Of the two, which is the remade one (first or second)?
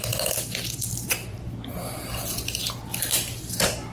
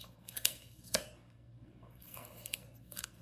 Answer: second